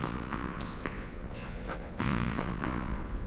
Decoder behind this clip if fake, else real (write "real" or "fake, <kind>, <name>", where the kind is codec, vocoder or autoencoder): fake, vocoder, Vocos